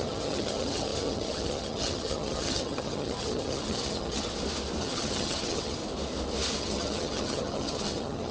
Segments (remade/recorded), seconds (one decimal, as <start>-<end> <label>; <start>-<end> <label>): 0.0-4.3 remade; 4.3-4.8 recorded; 4.8-5.8 remade; 5.8-6.6 recorded; 6.6-8.3 remade